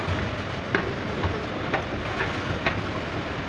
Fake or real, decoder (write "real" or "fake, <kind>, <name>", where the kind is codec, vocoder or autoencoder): real